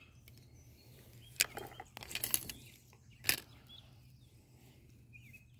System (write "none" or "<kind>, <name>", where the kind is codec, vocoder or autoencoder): none